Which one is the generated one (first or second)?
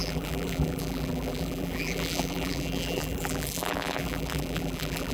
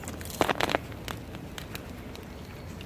first